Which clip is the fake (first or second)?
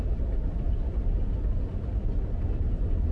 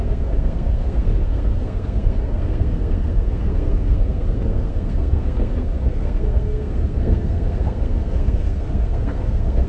second